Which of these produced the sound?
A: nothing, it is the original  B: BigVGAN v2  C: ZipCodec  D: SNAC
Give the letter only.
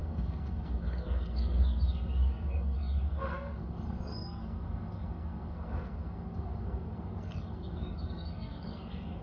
D